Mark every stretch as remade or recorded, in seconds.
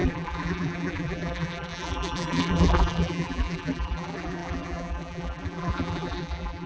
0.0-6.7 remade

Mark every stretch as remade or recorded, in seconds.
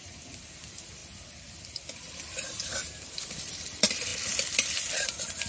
0.0-1.0 remade; 1.0-1.6 recorded; 1.6-5.5 remade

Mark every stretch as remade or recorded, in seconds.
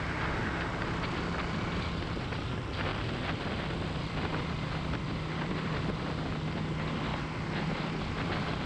0.0-2.9 recorded; 2.9-6.0 remade; 6.0-8.7 recorded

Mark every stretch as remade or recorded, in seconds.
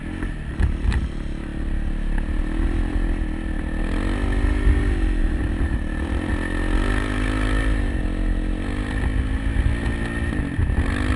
0.0-5.2 recorded; 5.2-6.3 remade; 6.3-11.2 recorded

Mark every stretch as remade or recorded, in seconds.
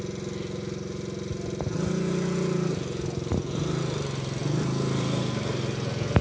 0.0-4.4 recorded; 4.4-5.2 remade; 5.2-6.2 recorded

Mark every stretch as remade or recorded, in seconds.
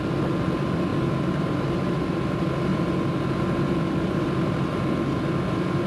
0.0-0.9 recorded; 0.9-1.8 remade; 1.8-2.7 recorded; 2.7-4.8 remade; 4.8-5.9 recorded